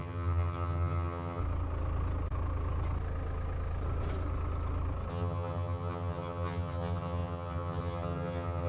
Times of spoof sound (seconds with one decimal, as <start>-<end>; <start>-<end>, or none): 0.0-1.4; 5.1-8.7